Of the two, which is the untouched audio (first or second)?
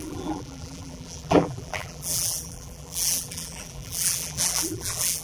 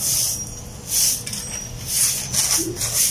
second